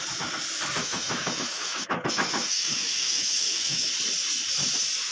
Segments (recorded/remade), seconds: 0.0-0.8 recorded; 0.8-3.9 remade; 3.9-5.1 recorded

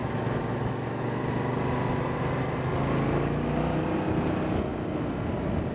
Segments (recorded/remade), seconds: 0.0-1.2 remade; 1.2-5.7 recorded

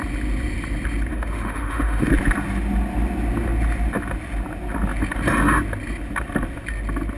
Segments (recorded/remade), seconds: 0.0-1.1 recorded; 1.1-2.1 remade; 2.1-7.2 recorded